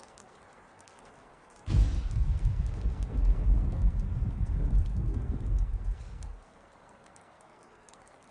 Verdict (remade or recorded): remade